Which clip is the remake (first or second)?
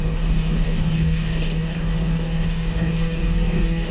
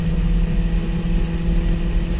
first